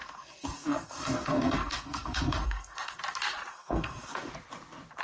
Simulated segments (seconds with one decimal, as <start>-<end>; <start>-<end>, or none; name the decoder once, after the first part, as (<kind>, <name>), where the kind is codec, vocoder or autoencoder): 0.0-3.0 (codec, SNAC); 3.5-4.3